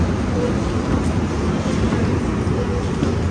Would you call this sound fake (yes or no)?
no